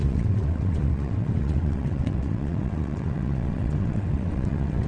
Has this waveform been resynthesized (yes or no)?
yes